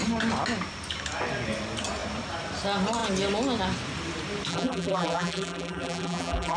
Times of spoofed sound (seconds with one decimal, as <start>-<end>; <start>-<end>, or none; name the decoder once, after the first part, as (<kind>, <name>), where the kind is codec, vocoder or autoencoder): 4.5-6.6 (vocoder, BigVGAN v2)